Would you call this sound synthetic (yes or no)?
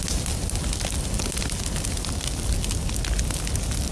no